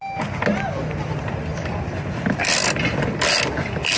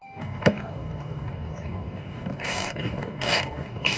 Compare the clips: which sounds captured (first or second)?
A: first